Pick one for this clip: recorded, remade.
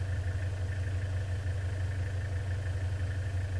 recorded